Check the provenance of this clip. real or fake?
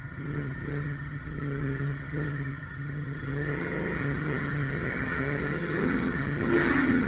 fake